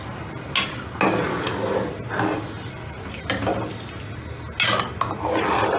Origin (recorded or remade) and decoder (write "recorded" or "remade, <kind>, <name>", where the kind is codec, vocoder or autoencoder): recorded